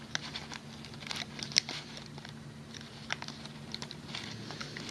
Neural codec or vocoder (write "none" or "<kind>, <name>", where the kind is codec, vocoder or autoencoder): none